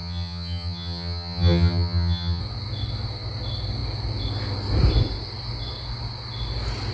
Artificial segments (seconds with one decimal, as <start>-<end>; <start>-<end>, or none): 0.0-2.4